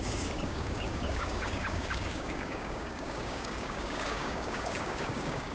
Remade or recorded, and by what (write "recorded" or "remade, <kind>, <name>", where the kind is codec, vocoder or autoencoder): remade, codec, DAC